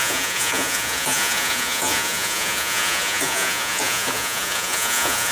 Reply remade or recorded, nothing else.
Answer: remade